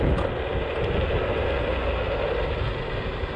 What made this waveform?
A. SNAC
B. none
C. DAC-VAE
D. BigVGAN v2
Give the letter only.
B